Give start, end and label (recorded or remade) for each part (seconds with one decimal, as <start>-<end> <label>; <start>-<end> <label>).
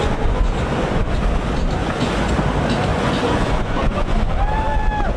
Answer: 0.0-1.2 remade; 1.2-1.8 recorded; 1.8-2.3 remade; 2.3-2.9 recorded; 2.9-4.3 remade; 4.3-5.2 recorded